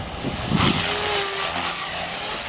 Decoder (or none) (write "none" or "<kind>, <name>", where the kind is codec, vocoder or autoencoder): none